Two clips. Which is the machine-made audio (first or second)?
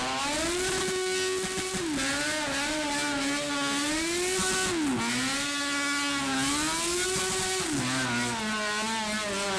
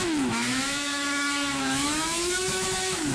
second